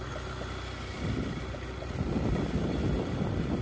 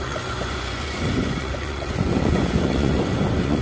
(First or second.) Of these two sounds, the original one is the first